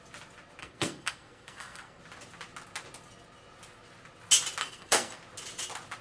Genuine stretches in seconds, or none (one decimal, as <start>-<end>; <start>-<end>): 0.0-0.6; 2.0-4.6; 5.2-6.0